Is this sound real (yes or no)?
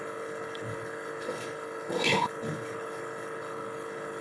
no